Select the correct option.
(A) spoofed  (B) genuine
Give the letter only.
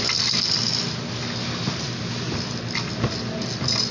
B